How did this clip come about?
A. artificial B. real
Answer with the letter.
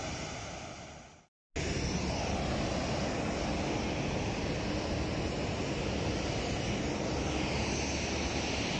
B